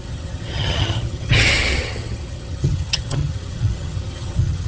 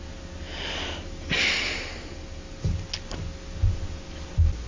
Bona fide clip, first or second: second